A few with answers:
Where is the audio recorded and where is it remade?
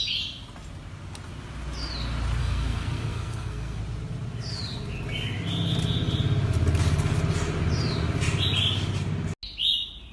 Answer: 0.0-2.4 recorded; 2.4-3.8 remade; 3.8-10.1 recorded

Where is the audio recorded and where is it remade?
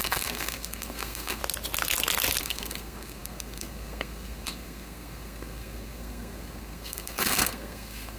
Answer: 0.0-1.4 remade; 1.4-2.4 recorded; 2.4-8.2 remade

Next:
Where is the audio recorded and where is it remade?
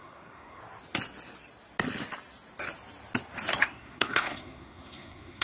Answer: 0.0-0.6 remade; 0.6-3.6 recorded; 3.6-5.4 remade